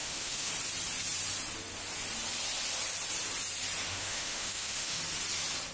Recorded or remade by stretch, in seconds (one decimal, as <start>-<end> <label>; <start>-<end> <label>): 0.0-0.5 remade; 0.5-3.9 recorded; 3.9-5.0 remade; 5.0-5.7 recorded